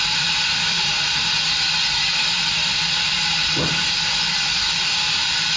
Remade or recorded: remade